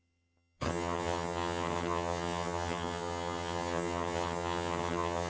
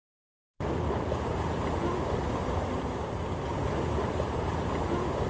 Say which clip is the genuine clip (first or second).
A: second